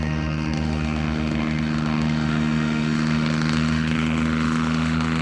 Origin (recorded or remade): remade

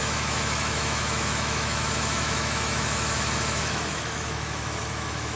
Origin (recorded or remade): remade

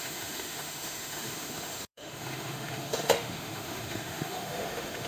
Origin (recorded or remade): remade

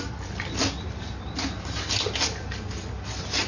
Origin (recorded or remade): recorded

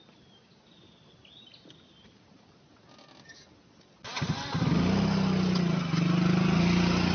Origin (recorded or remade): recorded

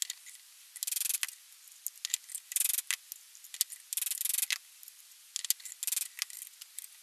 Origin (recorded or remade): recorded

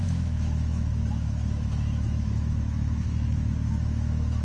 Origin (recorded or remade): remade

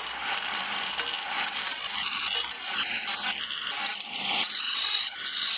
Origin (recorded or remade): recorded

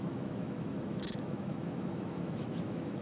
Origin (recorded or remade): remade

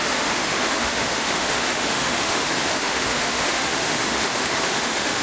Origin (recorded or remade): remade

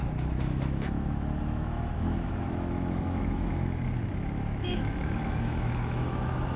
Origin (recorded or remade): remade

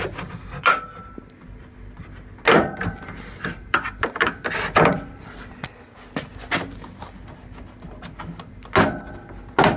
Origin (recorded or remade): recorded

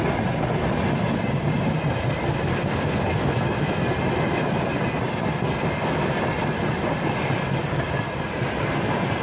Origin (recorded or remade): recorded